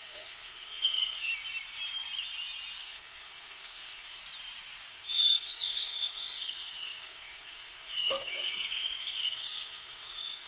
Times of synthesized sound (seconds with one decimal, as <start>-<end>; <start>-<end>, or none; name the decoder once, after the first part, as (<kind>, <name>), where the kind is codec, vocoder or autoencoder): 0.0-1.3 (codec, SNAC); 2.8-4.2; 4.9-10.5